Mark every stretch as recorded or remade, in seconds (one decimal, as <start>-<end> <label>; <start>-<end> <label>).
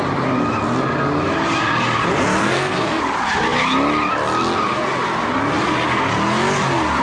0.0-2.4 recorded; 2.4-3.0 remade; 3.0-7.0 recorded